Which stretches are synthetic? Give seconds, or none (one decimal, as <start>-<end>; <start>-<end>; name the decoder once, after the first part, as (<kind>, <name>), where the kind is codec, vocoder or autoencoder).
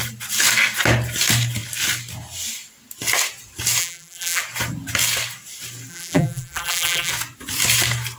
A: 3.8-4.4 (vocoder, BigVGAN v2); 5.9-7.1